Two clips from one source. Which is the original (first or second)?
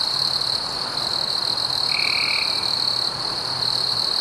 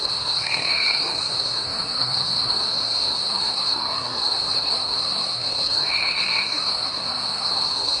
first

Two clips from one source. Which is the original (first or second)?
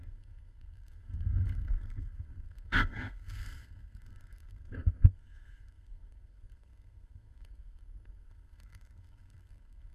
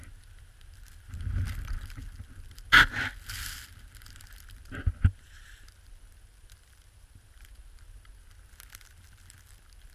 second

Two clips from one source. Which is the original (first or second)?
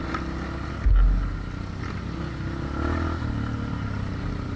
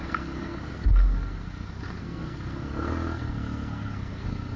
first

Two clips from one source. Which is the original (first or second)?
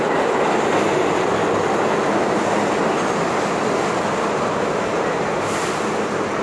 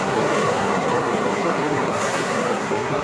first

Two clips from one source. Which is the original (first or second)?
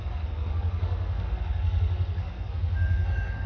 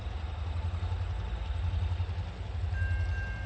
second